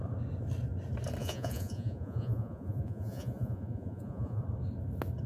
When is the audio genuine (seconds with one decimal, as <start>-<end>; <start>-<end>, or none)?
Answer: 0.0-1.2; 4.4-5.3